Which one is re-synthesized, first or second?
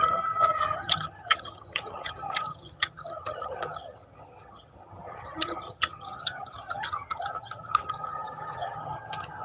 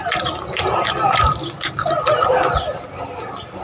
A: first